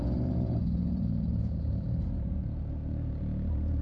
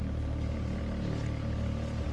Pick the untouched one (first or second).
second